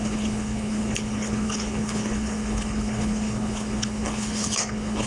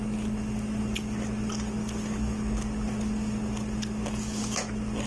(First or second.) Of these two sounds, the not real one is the first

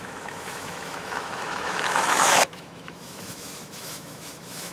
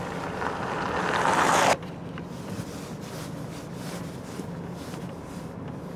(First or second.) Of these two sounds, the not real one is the first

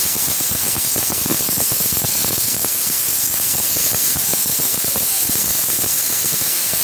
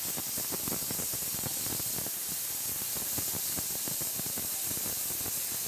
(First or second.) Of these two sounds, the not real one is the first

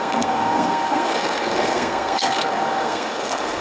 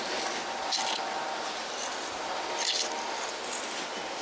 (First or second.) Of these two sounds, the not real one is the first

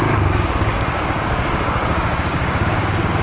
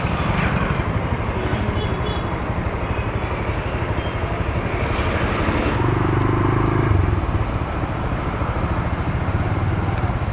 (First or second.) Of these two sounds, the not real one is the first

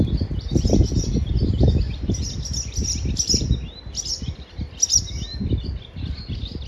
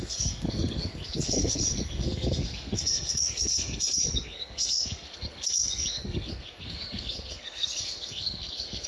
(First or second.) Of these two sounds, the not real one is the second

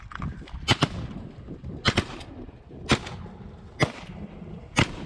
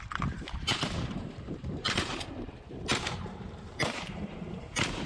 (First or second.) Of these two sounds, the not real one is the second